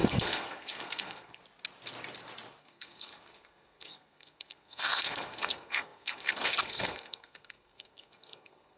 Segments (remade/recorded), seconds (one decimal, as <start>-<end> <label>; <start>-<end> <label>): 0.0-1.4 remade; 1.4-2.6 recorded; 2.6-8.8 remade